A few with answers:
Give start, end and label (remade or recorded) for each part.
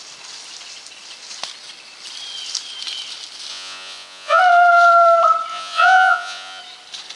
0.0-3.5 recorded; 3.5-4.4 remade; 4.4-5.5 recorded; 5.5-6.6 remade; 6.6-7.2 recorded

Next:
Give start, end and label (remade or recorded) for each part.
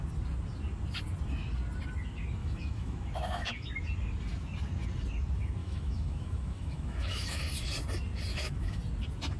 0.0-2.4 recorded; 2.4-3.7 remade; 3.7-5.6 recorded; 5.6-7.4 remade; 7.4-8.3 recorded; 8.3-8.8 remade; 8.8-9.4 recorded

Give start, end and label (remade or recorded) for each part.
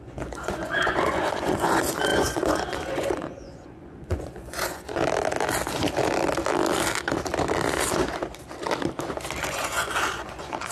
0.0-5.0 remade; 5.0-9.4 recorded; 9.4-10.7 remade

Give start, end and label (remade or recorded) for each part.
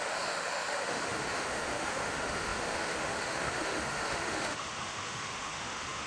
0.0-6.1 remade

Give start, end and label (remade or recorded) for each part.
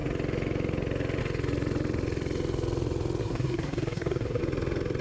0.0-3.2 recorded; 3.2-4.4 remade; 4.4-5.0 recorded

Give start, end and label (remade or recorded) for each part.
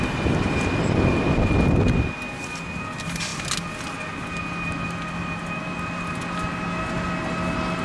0.0-7.8 recorded